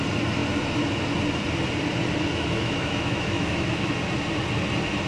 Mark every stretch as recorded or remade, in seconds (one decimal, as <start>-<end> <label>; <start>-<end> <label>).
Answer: 0.0-2.3 recorded; 2.3-3.9 remade; 3.9-5.1 recorded